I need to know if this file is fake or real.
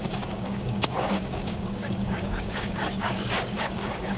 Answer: fake